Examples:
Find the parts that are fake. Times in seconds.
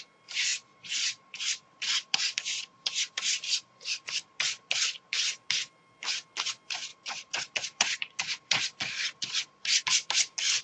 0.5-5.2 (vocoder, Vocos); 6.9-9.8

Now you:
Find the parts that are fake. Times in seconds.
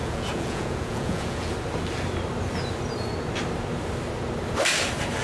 0.0-1.5 (vocoder, Vocos)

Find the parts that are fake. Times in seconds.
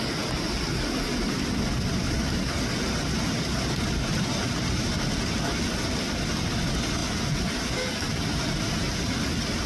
none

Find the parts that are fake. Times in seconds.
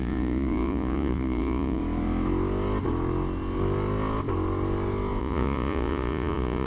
0.0-1.8 (vocoder, Vocos); 5.2-6.7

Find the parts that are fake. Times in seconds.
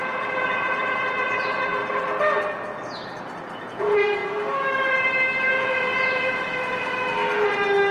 0.0-1.8 (vocoder, Vocos); 3.6-4.2; 5.4-6.9